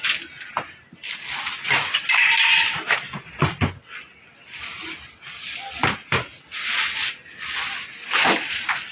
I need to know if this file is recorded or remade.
recorded